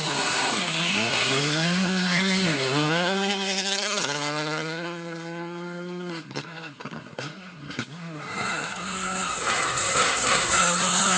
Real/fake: fake